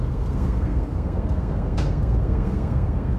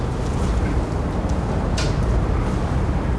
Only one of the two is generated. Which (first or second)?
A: first